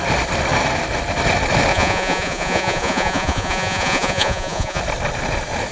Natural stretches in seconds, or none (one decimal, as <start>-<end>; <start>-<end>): 0.0-1.7; 4.8-5.7